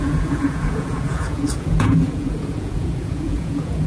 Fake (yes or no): yes